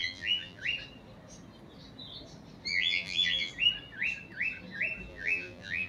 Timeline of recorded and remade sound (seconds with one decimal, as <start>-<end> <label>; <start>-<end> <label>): 0.0-0.6 remade; 0.6-2.7 recorded; 2.7-3.5 remade; 3.5-5.1 recorded; 5.1-5.9 remade